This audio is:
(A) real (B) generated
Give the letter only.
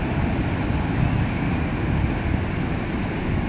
A